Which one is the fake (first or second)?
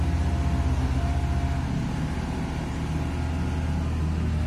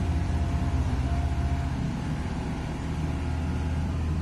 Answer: second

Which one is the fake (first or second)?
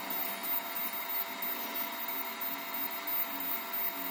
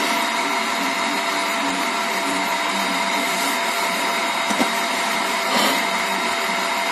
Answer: second